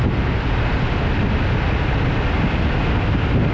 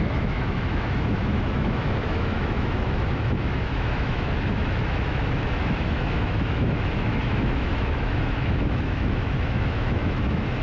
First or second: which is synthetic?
second